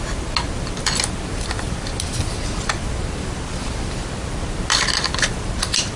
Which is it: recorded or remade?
recorded